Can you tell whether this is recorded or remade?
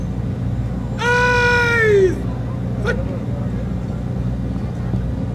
recorded